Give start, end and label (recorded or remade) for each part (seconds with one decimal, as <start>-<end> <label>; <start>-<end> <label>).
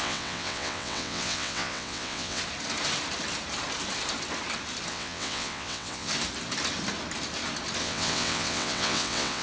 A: 0.0-2.4 remade; 2.4-4.9 recorded; 4.9-6.1 remade; 6.1-7.8 recorded; 7.8-9.4 remade